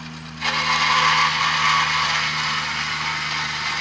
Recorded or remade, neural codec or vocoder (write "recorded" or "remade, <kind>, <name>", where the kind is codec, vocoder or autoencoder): recorded